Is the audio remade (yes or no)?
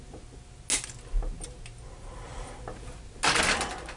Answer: no